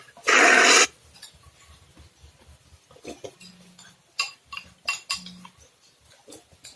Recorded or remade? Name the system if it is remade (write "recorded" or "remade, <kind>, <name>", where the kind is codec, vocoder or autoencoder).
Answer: recorded